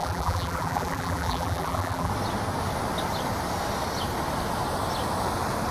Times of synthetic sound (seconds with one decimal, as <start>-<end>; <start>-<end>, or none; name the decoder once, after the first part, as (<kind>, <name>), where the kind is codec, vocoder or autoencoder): 0.0-2.1 (vocoder, BigVGAN v2)